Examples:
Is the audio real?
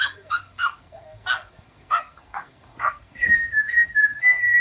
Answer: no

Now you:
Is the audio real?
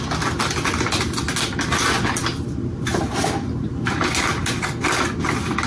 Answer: yes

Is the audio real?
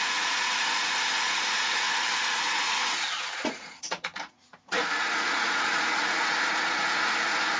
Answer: no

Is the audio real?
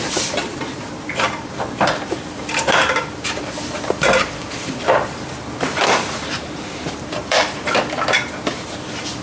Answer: no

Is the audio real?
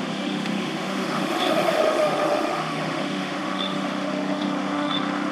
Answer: no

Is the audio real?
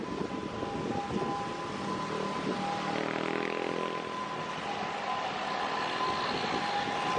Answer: yes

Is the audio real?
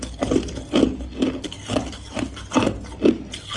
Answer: yes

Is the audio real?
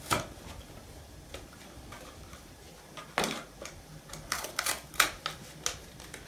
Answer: yes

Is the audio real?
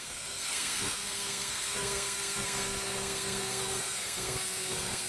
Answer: no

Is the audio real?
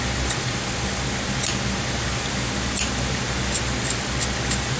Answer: yes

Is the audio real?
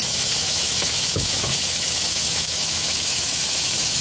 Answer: no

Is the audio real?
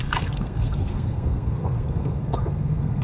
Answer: no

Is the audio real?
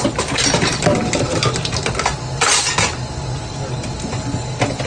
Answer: yes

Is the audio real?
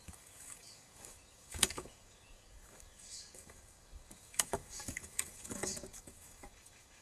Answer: no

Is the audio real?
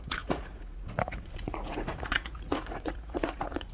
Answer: no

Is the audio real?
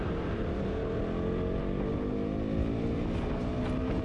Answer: yes